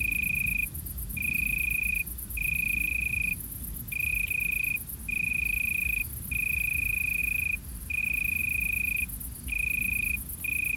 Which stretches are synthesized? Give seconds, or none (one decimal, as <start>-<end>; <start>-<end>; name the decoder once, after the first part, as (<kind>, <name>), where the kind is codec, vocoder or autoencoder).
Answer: 0.6-3.1 (vocoder, BigVGAN v2); 7.2-8.0